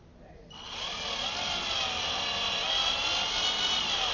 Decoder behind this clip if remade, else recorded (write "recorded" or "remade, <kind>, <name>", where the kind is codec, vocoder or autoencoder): remade, vocoder, BigVGAN v2